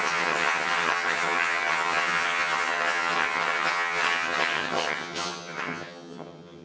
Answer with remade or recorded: remade